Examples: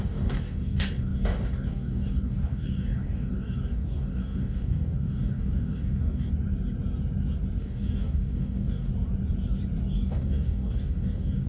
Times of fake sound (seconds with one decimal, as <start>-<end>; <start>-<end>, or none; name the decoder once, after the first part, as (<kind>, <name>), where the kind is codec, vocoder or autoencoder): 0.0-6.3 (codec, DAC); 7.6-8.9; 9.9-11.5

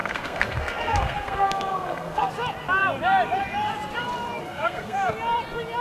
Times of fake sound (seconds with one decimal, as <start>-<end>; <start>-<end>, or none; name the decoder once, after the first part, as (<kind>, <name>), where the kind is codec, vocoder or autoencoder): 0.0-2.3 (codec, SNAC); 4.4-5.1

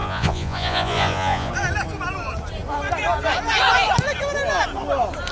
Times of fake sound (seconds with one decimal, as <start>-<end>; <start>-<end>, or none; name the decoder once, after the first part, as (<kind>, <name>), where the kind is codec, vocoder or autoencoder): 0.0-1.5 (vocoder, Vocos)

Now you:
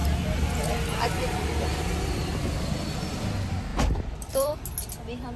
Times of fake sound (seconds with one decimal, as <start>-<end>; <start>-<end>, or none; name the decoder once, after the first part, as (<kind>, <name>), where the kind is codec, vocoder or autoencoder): 3.7-4.5 (vocoder, BigVGAN v2)

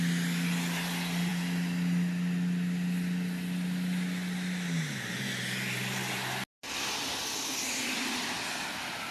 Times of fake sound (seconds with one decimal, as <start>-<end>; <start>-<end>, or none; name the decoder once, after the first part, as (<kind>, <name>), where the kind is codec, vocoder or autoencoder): none

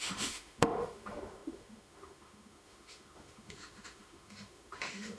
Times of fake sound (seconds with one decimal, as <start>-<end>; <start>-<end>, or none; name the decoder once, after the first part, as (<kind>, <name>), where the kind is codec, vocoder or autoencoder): 0.0-5.2 (autoencoder, DAC-VAE)

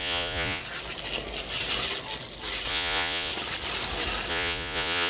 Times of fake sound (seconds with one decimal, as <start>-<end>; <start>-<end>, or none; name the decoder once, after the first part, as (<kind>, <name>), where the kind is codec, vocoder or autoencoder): 0.0-0.6 (vocoder, Vocos); 2.7-3.3; 4.3-5.1

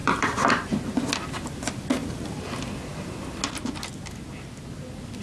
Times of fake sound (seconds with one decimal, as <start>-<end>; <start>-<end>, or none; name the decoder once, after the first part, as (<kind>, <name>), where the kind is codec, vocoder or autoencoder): 0.0-0.5 (vocoder, BigVGAN v2)